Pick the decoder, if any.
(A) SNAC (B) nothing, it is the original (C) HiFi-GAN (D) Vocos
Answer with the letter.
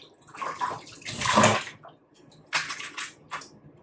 B